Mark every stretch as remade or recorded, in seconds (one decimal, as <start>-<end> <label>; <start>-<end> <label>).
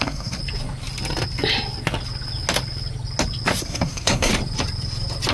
0.0-0.4 remade; 0.4-3.6 recorded; 3.6-4.3 remade; 4.3-5.3 recorded